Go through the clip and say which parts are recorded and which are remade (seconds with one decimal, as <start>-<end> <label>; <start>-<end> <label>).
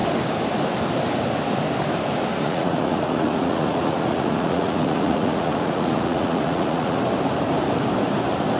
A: 0.0-2.3 recorded; 2.3-7.0 remade; 7.0-8.6 recorded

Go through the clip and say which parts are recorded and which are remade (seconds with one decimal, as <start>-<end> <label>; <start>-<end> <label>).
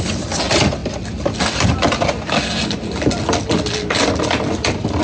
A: 0.0-5.0 recorded